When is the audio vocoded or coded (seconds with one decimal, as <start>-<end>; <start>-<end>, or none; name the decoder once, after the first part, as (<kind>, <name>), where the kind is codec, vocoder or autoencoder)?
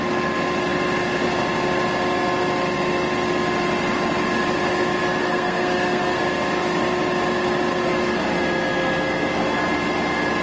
5.2-6.2 (codec, SNAC)